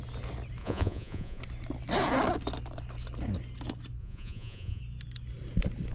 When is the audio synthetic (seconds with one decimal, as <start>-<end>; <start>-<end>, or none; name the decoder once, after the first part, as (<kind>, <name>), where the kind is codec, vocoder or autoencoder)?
0.6-1.4 (vocoder, Vocos); 4.0-4.8